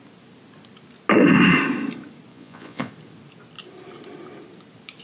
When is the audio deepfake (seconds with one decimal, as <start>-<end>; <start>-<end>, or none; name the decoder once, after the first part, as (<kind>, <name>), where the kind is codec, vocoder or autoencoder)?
2.3-2.9 (vocoder, Vocos)